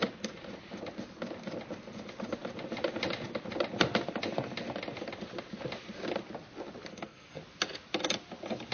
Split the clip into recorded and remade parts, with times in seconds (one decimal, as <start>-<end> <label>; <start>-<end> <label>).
0.0-6.9 recorded; 6.9-7.4 remade; 7.4-8.7 recorded